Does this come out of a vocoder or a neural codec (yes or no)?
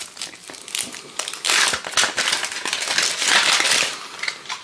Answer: no